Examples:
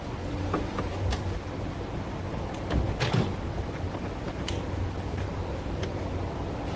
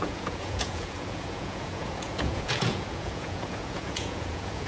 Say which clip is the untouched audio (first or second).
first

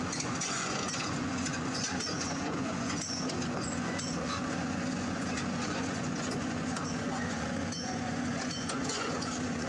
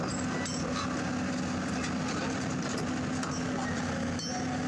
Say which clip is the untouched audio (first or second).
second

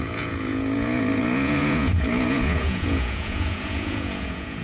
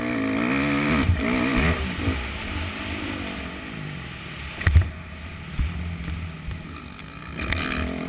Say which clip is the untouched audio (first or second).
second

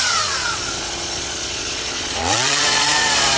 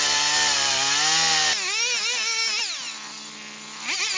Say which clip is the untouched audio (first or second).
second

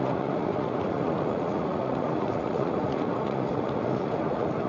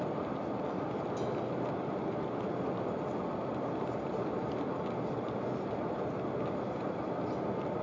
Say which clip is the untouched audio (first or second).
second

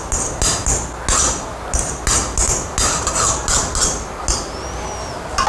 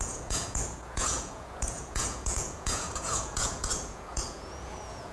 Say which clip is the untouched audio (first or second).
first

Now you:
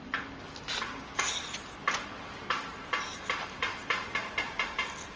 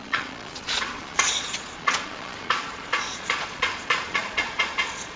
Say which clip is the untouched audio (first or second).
first